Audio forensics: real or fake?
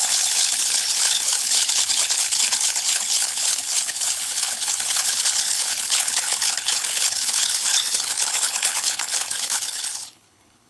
fake